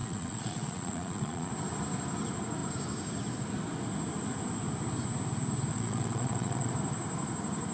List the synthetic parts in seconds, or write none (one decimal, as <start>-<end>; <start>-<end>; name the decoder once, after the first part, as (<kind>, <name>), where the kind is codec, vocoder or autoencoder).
0.0-1.5 (vocoder, Vocos); 5.7-6.7

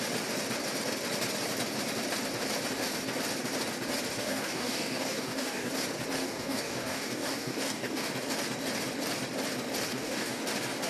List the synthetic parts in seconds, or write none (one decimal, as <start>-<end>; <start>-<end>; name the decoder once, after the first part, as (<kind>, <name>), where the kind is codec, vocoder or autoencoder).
4.2-5.7 (codec, DAC); 6.2-8.1; 9.9-10.4

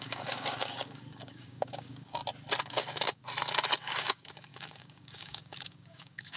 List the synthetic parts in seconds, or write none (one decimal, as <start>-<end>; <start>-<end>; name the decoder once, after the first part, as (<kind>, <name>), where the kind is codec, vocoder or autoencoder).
0.0-2.2 (codec, DAC); 2.7-3.2; 3.8-6.4

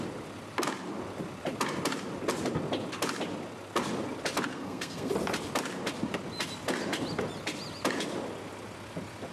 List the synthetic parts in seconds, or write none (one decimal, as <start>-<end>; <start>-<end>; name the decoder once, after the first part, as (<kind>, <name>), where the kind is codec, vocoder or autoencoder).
4.5-5.1 (codec, SNAC)